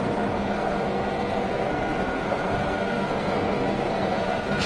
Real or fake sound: fake